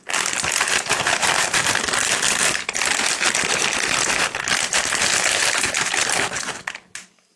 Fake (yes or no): no